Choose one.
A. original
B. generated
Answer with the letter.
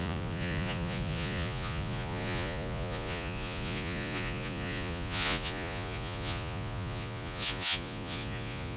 B